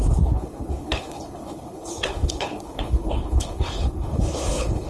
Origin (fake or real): fake